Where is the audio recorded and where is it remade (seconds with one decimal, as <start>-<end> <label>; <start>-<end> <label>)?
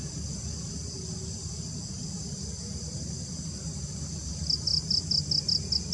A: 0.0-5.9 recorded